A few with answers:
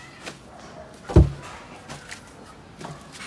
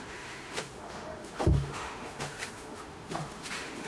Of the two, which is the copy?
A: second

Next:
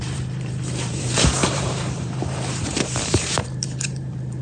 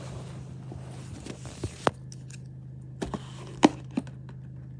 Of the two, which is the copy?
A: first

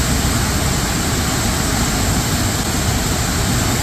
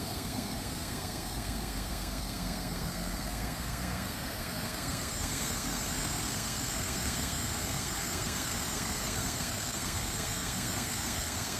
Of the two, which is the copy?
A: second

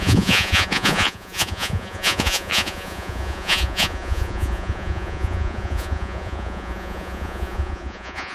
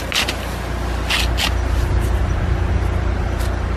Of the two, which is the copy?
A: first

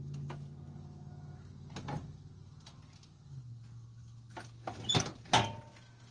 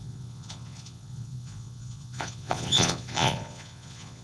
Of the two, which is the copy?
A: second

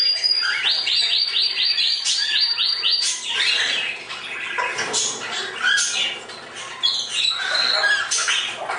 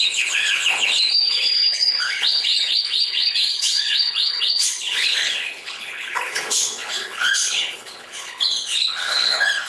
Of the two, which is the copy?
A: second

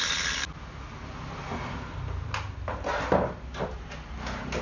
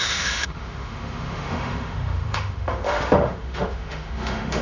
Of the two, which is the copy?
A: second